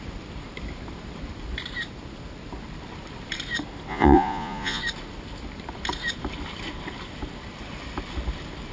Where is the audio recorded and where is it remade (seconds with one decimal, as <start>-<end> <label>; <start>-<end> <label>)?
0.0-3.9 recorded; 3.9-4.8 remade; 4.8-8.7 recorded

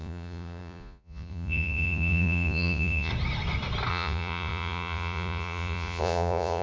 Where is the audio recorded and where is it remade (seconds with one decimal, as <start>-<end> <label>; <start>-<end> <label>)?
0.0-3.1 remade; 3.1-3.9 recorded; 3.9-6.6 remade

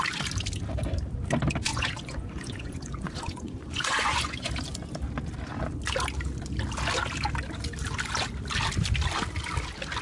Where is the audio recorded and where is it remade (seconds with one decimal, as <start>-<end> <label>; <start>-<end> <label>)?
0.0-1.7 recorded; 1.7-4.5 remade; 4.5-10.0 recorded

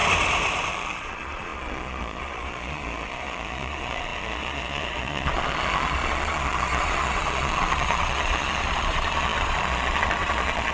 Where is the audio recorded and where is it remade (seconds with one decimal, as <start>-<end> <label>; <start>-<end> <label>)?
0.0-0.7 recorded; 0.7-10.7 remade

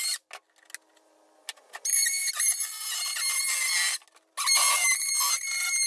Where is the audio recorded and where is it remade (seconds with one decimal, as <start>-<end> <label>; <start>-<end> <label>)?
0.0-5.9 recorded

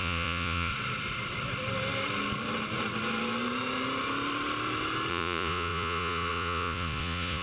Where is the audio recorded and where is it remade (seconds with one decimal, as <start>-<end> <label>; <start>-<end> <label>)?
0.0-0.7 remade; 0.7-5.1 recorded; 5.1-7.4 remade